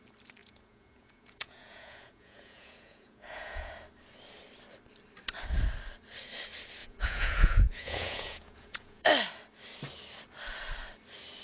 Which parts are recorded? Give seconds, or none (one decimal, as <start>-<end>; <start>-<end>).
0.0-0.4; 3.7-6.8; 9.1-11.4